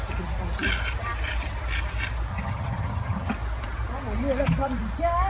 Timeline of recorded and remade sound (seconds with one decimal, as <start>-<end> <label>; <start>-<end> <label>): 0.0-2.3 recorded; 2.3-3.3 remade; 3.3-5.3 recorded